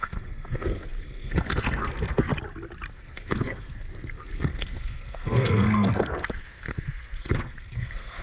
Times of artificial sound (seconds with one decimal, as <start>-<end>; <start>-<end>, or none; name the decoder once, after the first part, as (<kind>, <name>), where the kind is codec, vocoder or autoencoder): 0.0-2.3 (codec, SNAC); 2.9-8.2